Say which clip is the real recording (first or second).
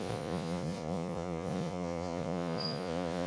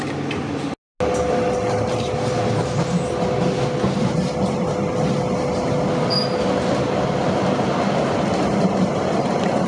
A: second